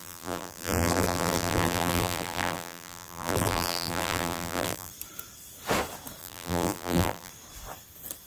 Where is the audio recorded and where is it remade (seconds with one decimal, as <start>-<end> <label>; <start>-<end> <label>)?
0.0-4.9 remade; 4.9-6.2 recorded; 6.2-7.3 remade; 7.3-8.3 recorded